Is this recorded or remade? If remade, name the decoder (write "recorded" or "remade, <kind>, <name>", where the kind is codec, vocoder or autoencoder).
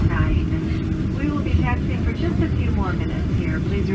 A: recorded